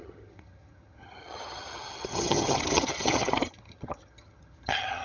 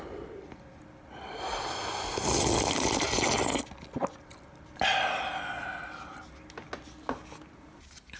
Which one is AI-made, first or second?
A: first